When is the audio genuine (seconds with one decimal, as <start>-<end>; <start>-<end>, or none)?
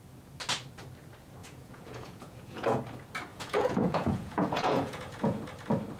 0.0-1.4; 2.8-3.3; 5.4-6.0